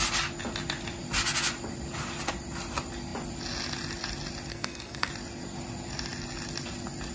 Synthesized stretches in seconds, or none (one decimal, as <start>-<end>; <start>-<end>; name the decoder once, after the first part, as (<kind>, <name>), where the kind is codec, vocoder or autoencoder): 4.5-5.1 (codec, SNAC)